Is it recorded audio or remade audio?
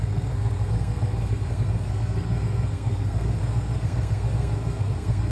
remade